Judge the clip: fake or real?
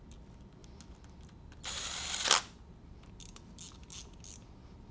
real